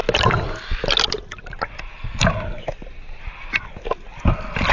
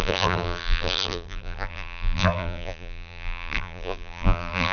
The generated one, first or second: second